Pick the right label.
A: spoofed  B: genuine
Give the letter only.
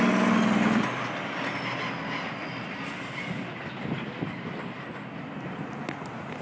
B